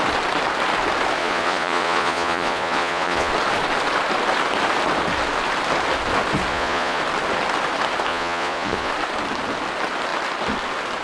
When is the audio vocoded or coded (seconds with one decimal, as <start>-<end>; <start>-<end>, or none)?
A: 1.2-3.3; 6.5-7.0; 8.1-8.9